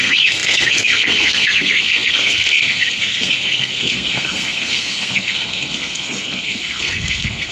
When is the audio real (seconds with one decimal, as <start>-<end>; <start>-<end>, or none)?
none